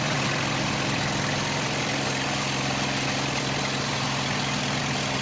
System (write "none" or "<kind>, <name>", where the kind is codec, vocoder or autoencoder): none